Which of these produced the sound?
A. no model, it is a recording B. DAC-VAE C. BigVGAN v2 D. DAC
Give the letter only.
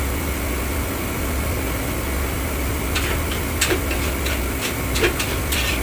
A